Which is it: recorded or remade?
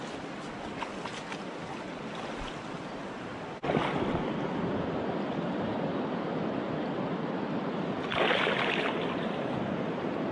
recorded